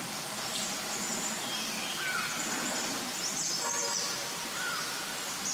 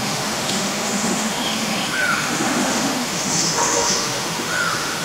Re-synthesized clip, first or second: second